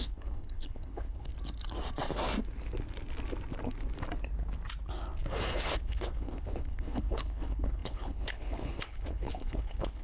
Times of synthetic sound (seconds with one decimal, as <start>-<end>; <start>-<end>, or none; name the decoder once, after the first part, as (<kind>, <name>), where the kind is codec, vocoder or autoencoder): 0.0-1.3 (codec, HILCodec); 5.5-10.0